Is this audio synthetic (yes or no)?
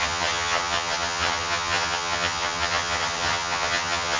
yes